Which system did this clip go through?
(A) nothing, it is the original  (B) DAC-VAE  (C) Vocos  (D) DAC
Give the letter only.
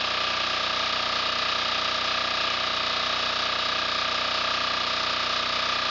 A